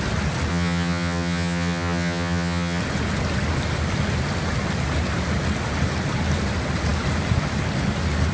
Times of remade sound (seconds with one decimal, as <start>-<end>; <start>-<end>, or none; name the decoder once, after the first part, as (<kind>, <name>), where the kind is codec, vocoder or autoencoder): 0.5-2.8 (vocoder, HiFi-GAN)